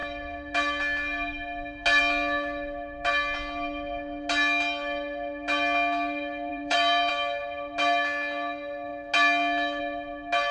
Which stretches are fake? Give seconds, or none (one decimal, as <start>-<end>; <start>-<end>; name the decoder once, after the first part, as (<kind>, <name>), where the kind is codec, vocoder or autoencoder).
6.5-7.1 (vocoder, BigVGAN v2)